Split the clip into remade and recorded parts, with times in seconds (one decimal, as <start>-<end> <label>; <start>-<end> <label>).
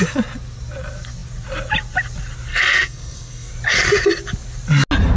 0.0-2.5 recorded; 2.5-3.5 remade; 3.5-5.2 recorded